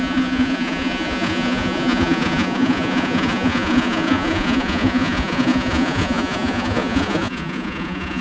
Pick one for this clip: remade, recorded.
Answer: remade